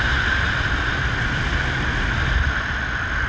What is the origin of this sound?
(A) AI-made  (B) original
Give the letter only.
B